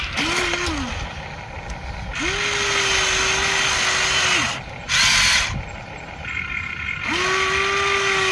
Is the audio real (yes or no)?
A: yes